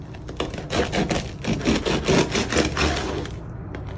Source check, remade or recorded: recorded